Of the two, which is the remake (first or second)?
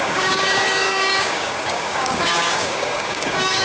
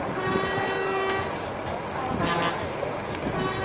first